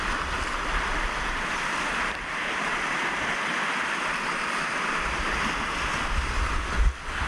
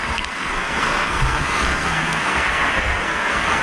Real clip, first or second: first